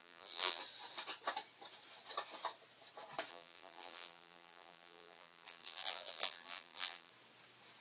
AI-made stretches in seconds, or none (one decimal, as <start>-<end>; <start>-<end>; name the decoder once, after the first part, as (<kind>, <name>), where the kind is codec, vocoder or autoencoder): 0.0-0.6 (vocoder, BigVGAN v2); 3.3-7.1